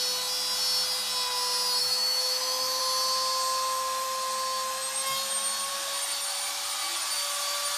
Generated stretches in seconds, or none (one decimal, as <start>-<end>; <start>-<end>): 1.8-2.8